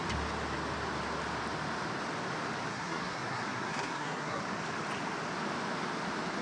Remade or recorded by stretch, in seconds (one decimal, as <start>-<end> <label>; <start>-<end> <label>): 0.0-2.7 recorded; 2.7-4.4 remade; 4.4-6.4 recorded